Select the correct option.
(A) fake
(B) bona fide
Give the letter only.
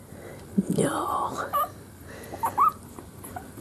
B